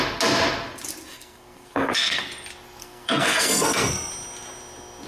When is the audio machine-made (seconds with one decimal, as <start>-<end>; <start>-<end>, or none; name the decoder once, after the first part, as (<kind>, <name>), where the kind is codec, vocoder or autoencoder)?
1.1-2.3 (codec, SNAC); 2.8-4.1

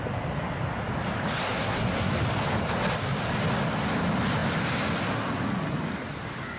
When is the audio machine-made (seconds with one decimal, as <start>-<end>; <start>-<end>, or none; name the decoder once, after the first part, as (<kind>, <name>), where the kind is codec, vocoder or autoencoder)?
1.4-2.1 (codec, SNAC)